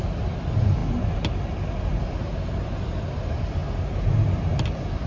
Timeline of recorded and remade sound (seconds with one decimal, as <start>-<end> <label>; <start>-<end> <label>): 0.0-5.1 recorded